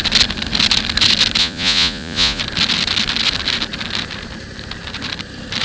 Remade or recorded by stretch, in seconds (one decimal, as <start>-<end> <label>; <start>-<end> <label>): 0.0-1.4 recorded; 1.4-2.4 remade; 2.4-5.6 recorded